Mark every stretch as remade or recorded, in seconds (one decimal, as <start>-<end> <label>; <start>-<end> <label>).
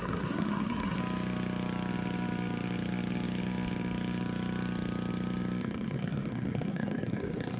0.0-1.0 remade; 1.0-5.6 recorded; 5.6-7.6 remade